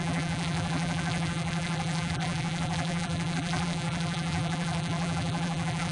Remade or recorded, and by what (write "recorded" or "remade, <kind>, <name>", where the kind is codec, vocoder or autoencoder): remade, vocoder, BigVGAN v2